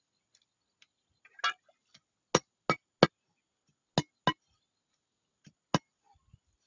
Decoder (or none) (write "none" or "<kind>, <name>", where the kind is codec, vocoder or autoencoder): none